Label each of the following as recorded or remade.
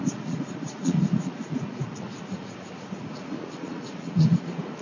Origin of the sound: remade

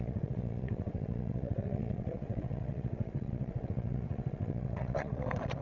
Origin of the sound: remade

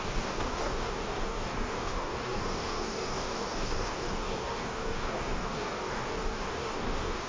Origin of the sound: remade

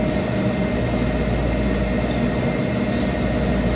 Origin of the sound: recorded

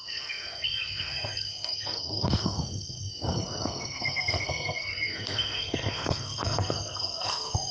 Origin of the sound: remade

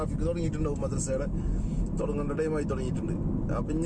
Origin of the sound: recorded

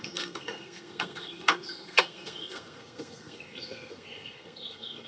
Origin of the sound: remade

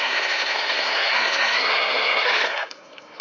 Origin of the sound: remade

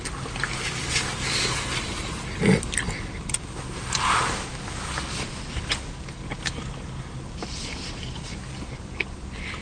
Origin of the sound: recorded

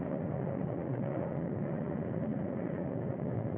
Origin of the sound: remade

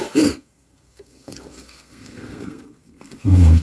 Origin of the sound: remade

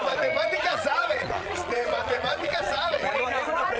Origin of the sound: remade